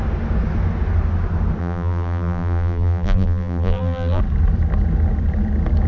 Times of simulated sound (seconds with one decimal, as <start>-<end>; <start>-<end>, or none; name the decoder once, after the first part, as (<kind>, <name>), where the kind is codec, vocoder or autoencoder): 1.6-4.2 (vocoder, BigVGAN v2)